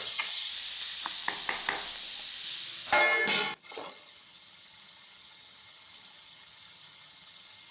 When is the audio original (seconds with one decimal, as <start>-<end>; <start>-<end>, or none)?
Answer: 0.5-3.6